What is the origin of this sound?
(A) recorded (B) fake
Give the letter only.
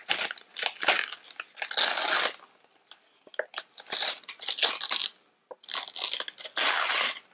A